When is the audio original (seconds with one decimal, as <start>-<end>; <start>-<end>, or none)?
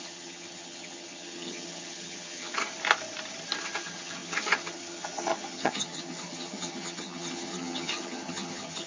2.7-3.6